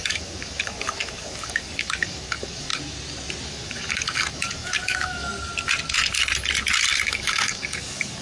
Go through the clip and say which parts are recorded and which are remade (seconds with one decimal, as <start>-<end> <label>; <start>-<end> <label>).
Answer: 0.0-2.7 remade; 2.7-3.5 recorded; 3.5-5.5 remade; 5.5-7.1 recorded; 7.1-8.2 remade